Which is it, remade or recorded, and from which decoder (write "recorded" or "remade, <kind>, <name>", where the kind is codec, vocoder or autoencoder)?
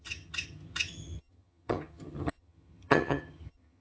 remade, vocoder, HiFi-GAN